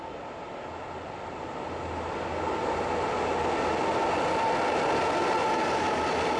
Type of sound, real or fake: real